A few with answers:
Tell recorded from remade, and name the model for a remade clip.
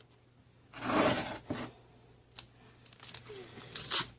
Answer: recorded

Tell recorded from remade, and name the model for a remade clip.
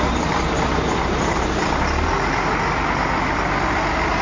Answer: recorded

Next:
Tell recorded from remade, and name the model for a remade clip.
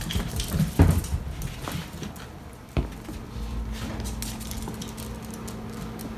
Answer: recorded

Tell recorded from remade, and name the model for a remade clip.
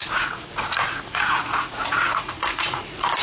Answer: remade, vocoder, Vocos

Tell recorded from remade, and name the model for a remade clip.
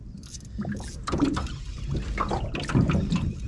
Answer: recorded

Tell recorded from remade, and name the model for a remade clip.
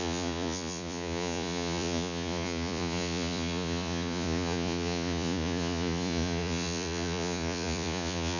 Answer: remade, vocoder, Vocos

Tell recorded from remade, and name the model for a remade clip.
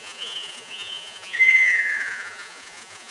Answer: remade, vocoder, Vocos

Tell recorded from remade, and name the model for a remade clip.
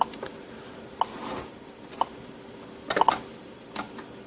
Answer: recorded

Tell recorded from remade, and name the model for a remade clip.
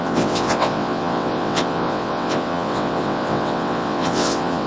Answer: remade, vocoder, WaveNeXt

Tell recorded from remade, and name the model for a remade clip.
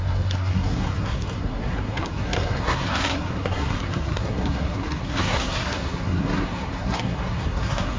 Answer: remade, codec, SNAC